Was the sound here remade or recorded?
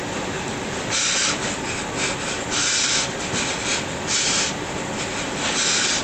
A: recorded